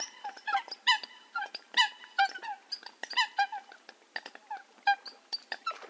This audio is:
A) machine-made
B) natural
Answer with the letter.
B